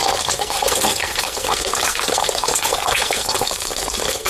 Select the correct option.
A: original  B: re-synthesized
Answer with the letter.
B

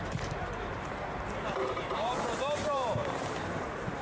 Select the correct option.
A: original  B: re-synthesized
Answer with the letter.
B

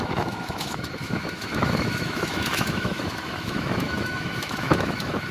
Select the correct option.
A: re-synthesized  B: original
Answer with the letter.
A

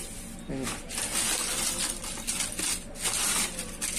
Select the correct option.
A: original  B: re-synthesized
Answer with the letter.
A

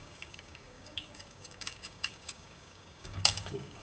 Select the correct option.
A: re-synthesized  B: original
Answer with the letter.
A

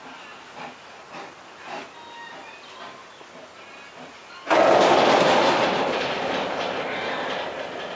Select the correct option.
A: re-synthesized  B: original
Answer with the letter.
B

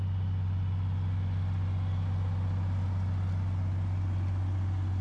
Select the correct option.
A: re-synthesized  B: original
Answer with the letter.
B